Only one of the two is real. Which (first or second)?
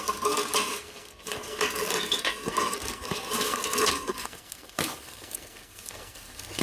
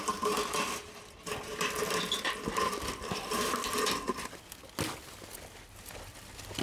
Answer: second